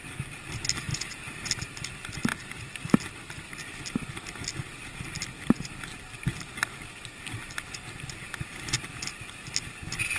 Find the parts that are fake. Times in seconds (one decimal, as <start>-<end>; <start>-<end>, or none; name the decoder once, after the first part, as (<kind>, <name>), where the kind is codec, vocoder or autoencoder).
0.9-1.5 (vocoder, Vocos)